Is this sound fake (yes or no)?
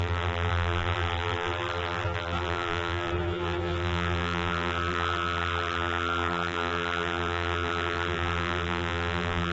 yes